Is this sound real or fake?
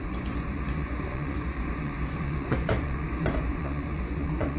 fake